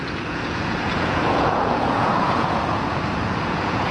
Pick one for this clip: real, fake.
fake